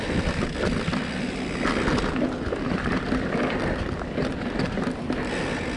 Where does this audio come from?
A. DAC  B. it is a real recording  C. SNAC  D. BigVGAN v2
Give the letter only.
B